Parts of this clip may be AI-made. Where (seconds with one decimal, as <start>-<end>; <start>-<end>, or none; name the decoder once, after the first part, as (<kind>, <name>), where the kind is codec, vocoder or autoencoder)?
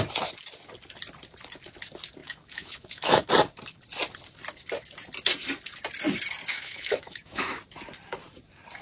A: 2.2-3.3 (autoencoder, DAC-VAE); 6.5-7.6